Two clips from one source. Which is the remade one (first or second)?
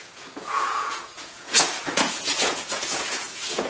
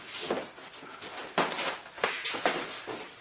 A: first